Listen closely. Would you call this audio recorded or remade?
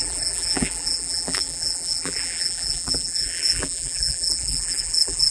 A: remade